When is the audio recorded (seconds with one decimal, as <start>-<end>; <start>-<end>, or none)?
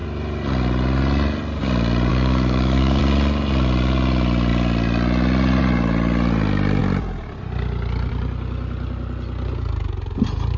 0.0-2.1; 3.0-10.6